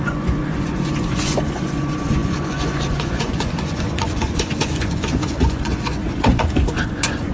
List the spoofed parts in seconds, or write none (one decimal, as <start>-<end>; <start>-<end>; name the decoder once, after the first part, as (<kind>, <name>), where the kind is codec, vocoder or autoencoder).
0.0-7.3 (vocoder, Vocos)